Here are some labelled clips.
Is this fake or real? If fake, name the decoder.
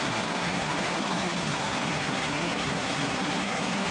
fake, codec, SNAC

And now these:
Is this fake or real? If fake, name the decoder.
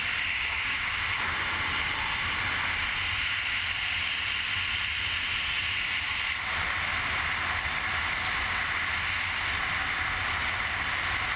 real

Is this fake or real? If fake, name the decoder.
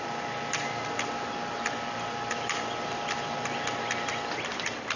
real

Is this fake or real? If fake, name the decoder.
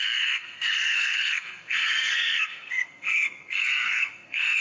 fake, codec, SNAC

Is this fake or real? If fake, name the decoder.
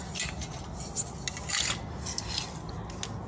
real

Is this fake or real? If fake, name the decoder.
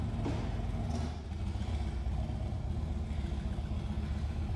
real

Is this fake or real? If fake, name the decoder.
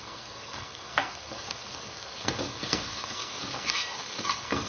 fake, codec, SNAC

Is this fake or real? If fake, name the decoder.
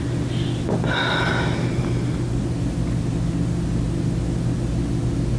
real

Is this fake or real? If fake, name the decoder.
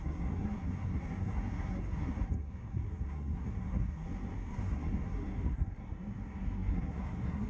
fake, codec, SNAC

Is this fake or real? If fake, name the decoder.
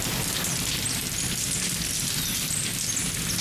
real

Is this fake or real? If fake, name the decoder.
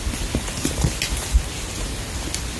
real